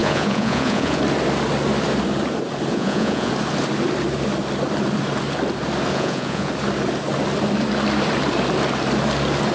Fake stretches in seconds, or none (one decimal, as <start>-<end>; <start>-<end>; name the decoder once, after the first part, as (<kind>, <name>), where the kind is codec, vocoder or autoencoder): 0.0-1.0 (vocoder, Vocos); 2.7-3.3; 5.9-6.5